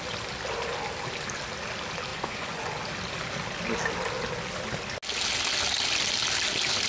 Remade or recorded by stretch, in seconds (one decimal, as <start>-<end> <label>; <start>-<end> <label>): 0.0-2.1 recorded; 2.1-2.7 remade; 2.7-6.9 recorded